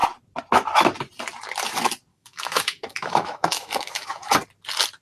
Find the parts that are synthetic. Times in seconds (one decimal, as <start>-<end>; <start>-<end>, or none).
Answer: 2.1-4.3